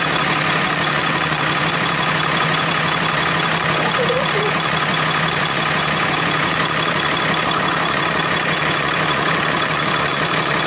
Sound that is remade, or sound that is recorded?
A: remade